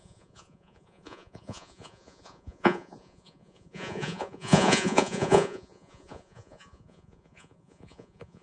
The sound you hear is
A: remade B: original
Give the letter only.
A